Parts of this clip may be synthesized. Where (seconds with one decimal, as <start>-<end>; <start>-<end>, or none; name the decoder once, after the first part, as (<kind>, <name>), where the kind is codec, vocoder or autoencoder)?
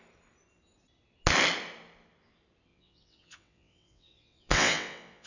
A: 2.7-5.3 (vocoder, WaveNeXt)